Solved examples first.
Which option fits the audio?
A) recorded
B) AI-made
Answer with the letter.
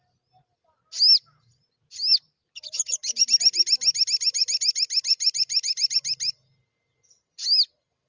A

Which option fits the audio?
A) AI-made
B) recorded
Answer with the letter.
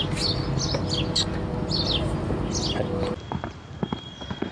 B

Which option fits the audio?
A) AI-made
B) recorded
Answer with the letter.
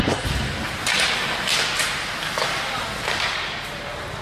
B